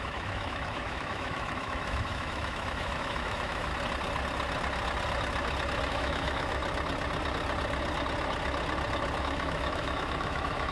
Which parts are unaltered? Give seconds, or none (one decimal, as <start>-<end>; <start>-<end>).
3.7-5.9; 6.6-9.2